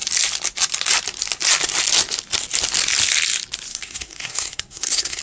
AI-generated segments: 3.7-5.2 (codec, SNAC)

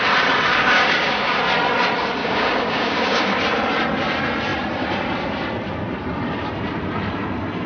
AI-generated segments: 0.5-1.4 (codec, DAC); 2.2-3.4

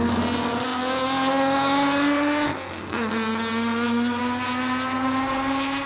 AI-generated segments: none